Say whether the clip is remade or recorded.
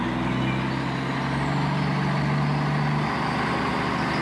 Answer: recorded